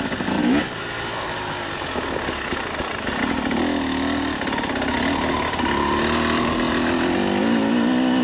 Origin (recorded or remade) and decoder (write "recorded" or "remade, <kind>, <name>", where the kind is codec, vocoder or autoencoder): recorded